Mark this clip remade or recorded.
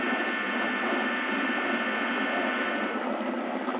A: recorded